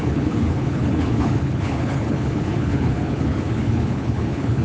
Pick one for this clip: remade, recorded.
remade